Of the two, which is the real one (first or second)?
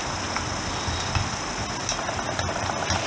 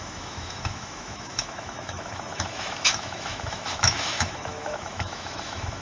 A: first